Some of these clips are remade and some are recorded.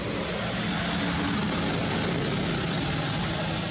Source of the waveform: recorded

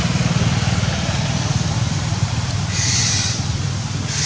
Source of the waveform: recorded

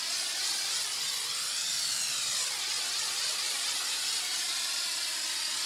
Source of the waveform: recorded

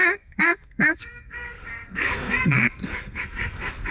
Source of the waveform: remade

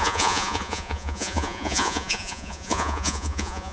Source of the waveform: remade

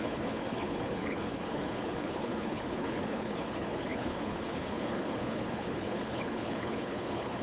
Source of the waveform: remade